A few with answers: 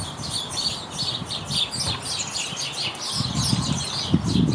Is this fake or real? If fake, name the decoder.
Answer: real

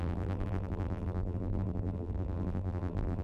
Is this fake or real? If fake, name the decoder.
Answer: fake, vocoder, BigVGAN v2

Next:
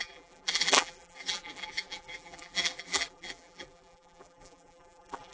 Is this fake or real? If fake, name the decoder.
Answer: fake, vocoder, BigVGAN v2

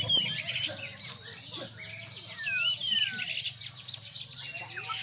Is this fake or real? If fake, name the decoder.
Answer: real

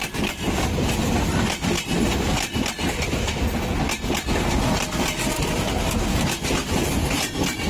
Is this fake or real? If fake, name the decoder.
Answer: real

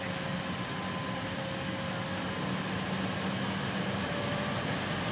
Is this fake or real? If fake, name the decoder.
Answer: real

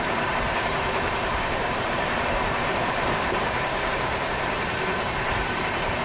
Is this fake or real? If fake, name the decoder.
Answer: fake, vocoder, BigVGAN v2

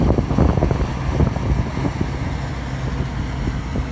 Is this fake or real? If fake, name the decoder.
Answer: real